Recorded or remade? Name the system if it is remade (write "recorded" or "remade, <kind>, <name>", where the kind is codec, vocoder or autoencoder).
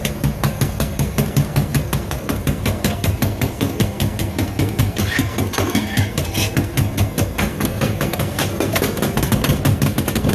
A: remade, codec, SNAC